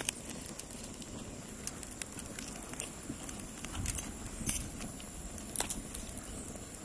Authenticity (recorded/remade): recorded